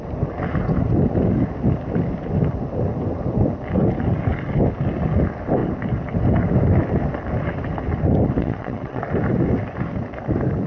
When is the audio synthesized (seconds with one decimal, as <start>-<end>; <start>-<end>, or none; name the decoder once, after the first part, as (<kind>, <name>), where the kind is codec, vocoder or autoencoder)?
8.4-9.0 (vocoder, WaveNeXt)